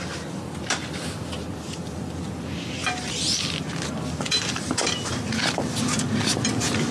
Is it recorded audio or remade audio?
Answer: remade